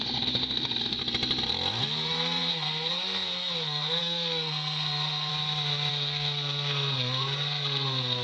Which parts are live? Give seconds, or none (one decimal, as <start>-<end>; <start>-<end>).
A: 1.0-1.8; 5.3-5.9